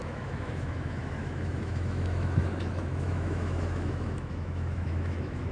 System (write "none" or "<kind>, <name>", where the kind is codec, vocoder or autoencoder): autoencoder, DAC-VAE